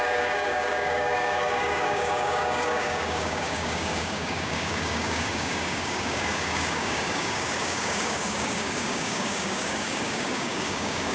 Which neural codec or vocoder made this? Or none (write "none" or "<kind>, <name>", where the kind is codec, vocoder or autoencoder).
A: codec, DAC